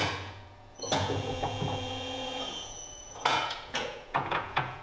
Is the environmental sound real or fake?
fake